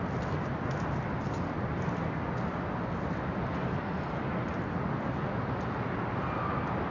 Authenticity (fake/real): real